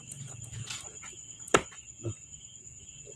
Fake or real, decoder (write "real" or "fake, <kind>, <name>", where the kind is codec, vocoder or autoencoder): fake, vocoder, Vocos